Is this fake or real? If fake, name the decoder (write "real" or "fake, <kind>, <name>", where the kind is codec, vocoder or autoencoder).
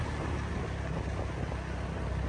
real